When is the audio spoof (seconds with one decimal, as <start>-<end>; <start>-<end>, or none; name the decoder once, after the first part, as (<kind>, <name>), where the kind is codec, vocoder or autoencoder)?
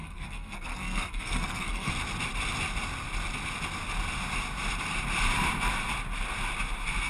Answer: 0.0-1.9 (codec, SNAC)